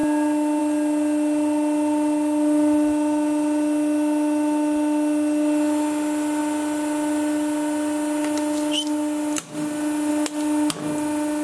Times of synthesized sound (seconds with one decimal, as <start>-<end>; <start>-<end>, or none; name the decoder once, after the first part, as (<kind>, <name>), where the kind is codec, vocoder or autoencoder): none